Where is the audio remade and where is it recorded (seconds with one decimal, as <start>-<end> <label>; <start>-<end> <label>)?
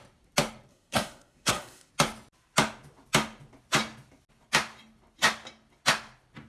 0.0-0.7 recorded; 0.7-1.9 remade; 1.9-6.5 recorded